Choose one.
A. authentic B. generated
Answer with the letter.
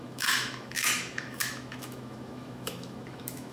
B